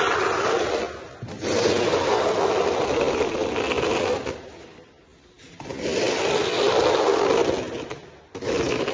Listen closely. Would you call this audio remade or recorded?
recorded